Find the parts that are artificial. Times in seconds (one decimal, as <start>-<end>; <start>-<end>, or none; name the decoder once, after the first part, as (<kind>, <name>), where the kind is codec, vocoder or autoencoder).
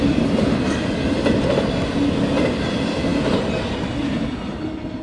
none